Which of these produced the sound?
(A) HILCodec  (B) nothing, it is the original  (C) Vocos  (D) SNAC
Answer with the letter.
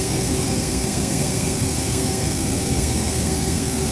D